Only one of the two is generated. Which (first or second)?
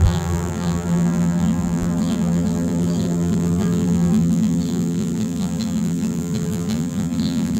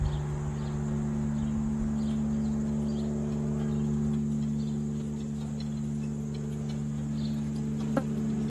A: first